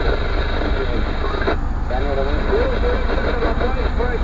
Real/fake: real